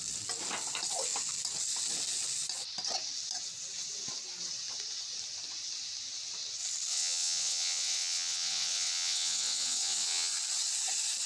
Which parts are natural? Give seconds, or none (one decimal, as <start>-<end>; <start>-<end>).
0.0-6.9; 10.3-11.3